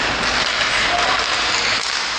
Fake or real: real